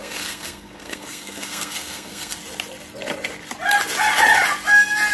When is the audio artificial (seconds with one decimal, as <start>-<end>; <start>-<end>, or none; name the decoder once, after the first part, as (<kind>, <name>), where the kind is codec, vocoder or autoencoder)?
0.0-2.4 (codec, SNAC)